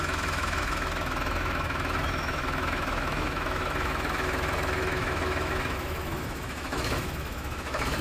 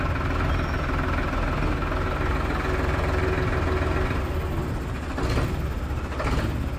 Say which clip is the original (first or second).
second